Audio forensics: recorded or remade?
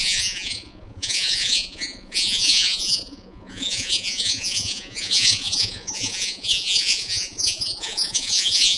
remade